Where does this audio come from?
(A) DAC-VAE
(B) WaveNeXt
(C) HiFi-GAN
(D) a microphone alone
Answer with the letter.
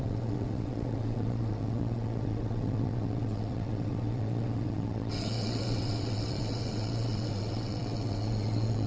B